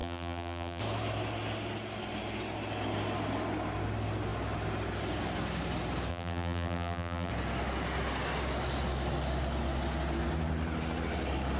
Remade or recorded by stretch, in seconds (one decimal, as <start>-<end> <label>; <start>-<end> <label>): 0.0-0.8 remade; 0.8-6.1 recorded; 6.1-7.3 remade; 7.3-11.6 recorded